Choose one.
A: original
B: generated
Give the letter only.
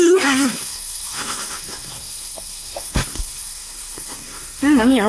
B